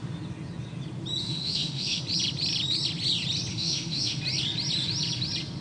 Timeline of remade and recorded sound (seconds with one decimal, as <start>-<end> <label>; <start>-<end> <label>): 0.0-1.2 recorded; 1.2-2.0 remade; 2.0-3.5 recorded; 3.5-4.2 remade; 4.2-5.6 recorded